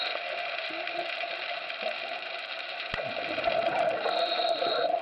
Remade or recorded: recorded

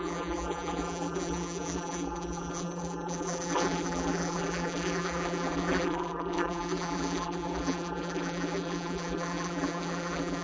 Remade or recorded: remade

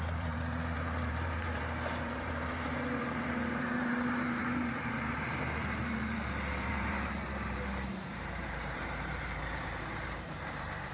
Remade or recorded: remade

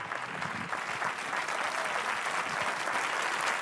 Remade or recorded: recorded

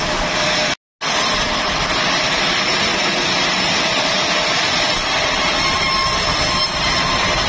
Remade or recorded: recorded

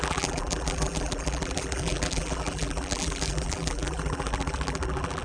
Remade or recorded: remade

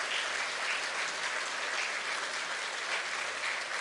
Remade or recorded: recorded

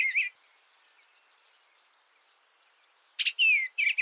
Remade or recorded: recorded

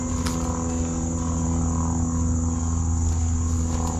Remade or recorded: recorded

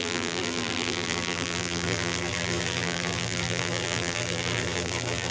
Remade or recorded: remade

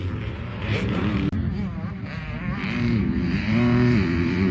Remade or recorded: remade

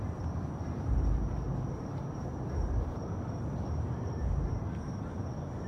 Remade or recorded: remade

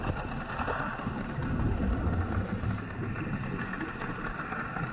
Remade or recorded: recorded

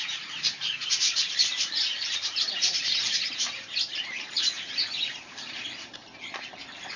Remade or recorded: remade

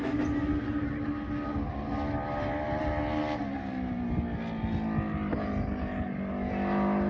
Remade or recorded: recorded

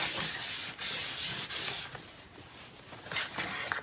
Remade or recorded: recorded